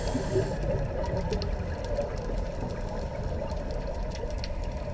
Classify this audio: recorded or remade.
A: recorded